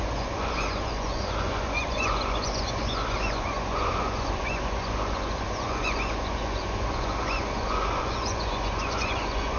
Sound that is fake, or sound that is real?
fake